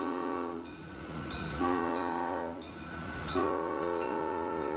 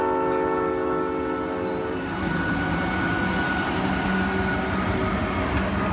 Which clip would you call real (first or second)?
second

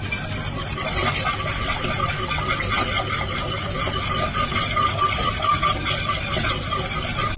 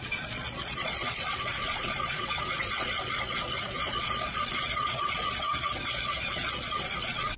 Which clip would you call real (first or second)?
first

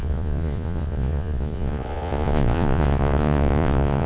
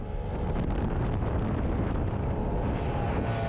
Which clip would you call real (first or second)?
second